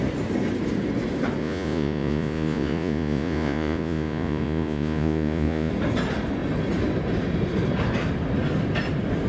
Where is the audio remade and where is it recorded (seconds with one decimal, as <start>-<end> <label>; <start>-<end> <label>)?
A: 0.0-1.4 recorded; 1.4-5.7 remade; 5.7-9.3 recorded